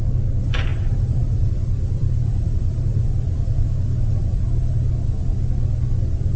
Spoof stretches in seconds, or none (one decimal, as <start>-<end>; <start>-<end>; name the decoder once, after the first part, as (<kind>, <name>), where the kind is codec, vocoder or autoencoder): 0.7-1.5 (vocoder, BigVGAN v2); 2.0-4.4